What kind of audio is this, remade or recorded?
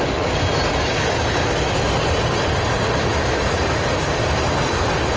recorded